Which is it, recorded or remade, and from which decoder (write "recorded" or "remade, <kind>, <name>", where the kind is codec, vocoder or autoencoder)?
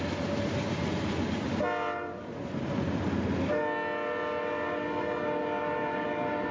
recorded